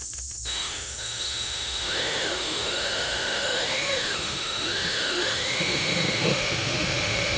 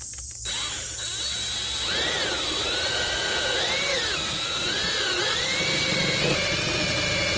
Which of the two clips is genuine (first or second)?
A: second